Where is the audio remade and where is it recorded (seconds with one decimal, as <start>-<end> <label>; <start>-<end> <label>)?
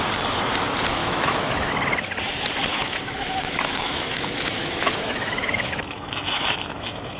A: 0.0-1.0 recorded; 1.0-1.7 remade; 1.7-2.7 recorded; 2.7-7.2 remade